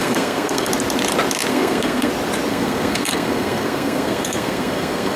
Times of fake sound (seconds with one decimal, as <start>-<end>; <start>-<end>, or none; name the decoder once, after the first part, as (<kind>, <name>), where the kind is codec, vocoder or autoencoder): 0.0-0.7 (codec, SNAC); 1.5-2.1; 2.5-5.2